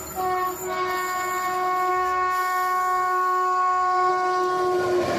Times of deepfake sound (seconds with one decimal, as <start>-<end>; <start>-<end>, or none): 1.9-4.1